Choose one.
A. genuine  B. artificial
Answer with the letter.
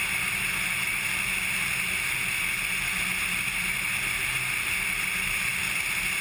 A